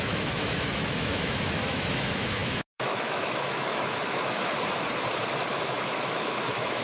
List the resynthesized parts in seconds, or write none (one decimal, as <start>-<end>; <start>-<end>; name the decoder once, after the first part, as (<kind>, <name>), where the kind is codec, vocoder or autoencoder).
0.0-4.5 (autoencoder, DAC-VAE); 5.5-6.8